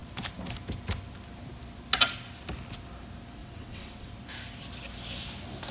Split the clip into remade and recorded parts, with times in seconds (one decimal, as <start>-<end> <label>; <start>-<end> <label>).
0.0-3.4 recorded; 3.4-4.1 remade; 4.1-5.7 recorded